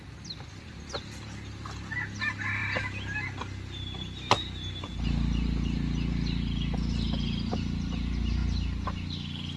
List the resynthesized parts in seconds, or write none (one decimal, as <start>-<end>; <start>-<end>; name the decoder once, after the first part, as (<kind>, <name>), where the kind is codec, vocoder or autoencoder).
none